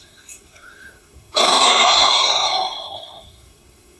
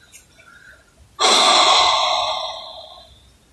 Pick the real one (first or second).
second